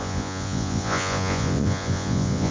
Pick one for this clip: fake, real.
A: fake